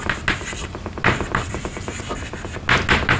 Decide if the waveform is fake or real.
real